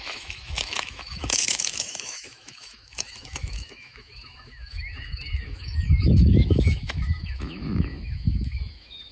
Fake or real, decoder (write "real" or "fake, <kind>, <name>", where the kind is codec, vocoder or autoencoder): fake, autoencoder, DAC-VAE